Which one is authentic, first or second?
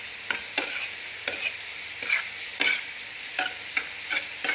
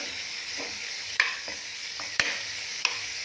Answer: first